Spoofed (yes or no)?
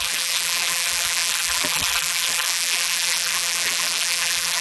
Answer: yes